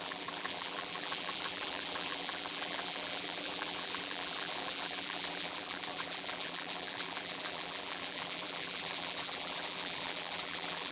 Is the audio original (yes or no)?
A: no